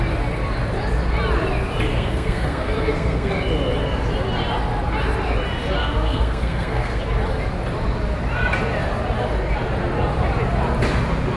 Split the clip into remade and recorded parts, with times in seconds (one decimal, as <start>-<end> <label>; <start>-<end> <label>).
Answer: 0.0-1.9 recorded; 1.9-3.3 remade; 3.3-5.8 recorded; 5.8-7.0 remade; 7.0-11.4 recorded